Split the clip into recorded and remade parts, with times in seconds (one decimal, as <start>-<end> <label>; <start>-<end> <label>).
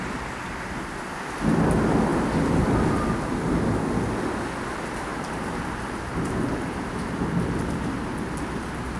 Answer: 0.0-5.1 recorded; 5.1-7.9 remade; 7.9-9.0 recorded